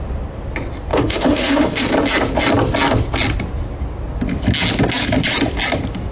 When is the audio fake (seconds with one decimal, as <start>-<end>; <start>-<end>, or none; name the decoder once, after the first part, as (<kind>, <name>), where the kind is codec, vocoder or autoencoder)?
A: 0.9-1.8 (autoencoder, DAC-VAE)